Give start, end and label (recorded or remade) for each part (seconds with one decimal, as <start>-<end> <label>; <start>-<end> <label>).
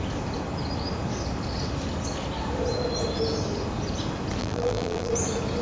0.0-4.4 recorded; 4.4-5.1 remade; 5.1-5.6 recorded